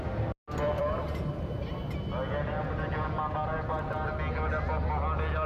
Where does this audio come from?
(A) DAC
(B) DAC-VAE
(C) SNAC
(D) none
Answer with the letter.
D